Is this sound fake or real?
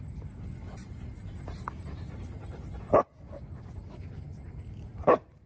real